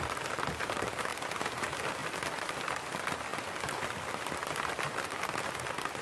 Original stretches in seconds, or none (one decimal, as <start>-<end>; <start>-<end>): 0.0-6.0